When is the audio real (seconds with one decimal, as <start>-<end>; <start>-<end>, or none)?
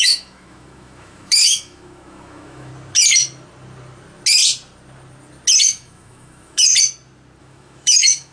2.7-5.6; 6.7-7.4